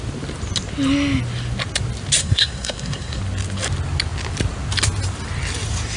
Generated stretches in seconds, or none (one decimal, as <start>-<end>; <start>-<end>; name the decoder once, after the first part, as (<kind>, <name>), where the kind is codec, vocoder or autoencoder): 2.2-3.2 (codec, SNAC)